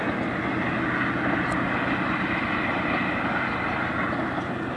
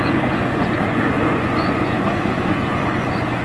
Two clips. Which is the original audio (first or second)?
first